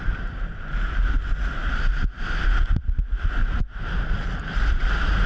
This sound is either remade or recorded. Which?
recorded